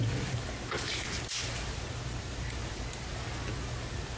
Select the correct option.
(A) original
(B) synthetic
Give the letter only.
A